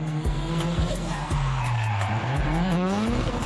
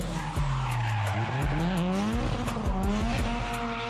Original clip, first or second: second